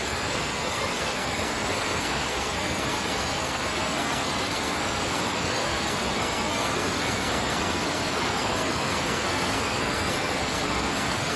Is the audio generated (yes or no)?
yes